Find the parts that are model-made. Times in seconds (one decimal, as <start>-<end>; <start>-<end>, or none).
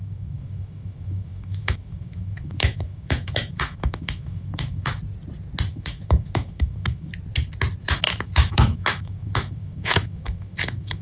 0.0-5.0; 5.7-7.1; 7.8-11.0